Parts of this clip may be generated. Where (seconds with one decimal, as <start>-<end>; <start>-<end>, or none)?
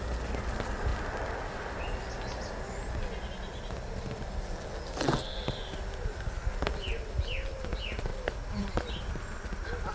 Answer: none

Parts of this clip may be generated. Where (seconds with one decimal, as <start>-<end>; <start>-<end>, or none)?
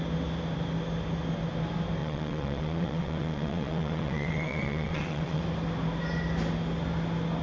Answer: 2.0-5.4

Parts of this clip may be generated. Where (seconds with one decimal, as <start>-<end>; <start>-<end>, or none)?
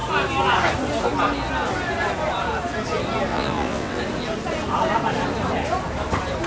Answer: 3.3-4.0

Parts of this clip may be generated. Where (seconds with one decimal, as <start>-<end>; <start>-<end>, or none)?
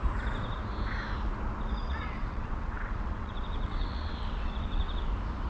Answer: 1.8-5.1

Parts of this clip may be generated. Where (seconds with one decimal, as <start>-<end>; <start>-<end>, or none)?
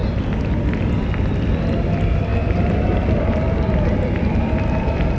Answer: none